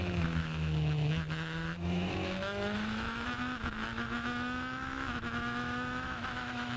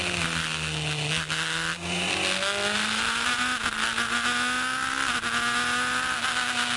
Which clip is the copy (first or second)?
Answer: first